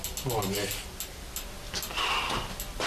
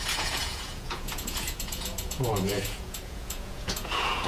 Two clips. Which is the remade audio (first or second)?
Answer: second